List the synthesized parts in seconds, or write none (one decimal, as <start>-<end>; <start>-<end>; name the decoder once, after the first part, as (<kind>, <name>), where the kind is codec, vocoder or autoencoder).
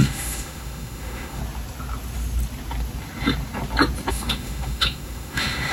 0.0-1.4 (autoencoder, DAC-VAE); 4.1-5.7